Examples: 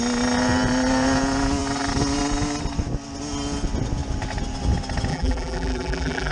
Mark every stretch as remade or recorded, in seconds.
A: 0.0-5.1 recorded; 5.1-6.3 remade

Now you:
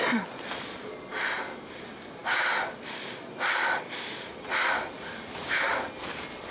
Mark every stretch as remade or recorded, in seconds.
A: 0.0-6.5 recorded

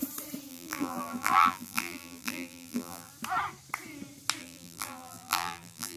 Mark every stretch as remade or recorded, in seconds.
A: 0.0-0.5 recorded; 0.5-3.1 remade; 3.1-4.4 recorded; 4.4-6.0 remade

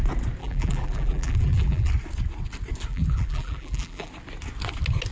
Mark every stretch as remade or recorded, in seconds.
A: 0.0-0.4 recorded; 0.4-1.9 remade; 1.9-2.9 recorded; 2.9-4.1 remade; 4.1-5.1 recorded

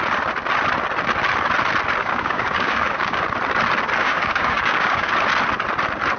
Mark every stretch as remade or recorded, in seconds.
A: 0.0-2.0 recorded; 2.0-3.2 remade; 3.2-4.0 recorded; 4.0-5.1 remade; 5.1-6.2 recorded

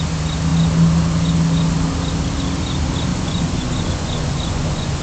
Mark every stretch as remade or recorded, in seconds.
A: 0.0-3.1 recorded; 3.1-5.0 remade

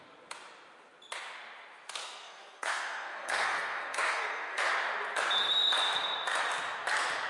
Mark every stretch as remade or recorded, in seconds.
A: 0.0-2.0 recorded; 2.0-4.7 remade; 4.7-7.3 recorded